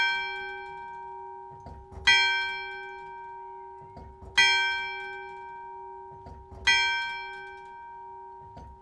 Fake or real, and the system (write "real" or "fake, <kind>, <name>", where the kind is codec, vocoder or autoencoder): real